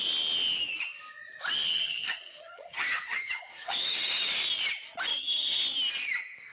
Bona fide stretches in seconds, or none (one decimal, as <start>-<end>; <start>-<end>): 0.0-1.7; 4.3-5.1; 5.6-6.5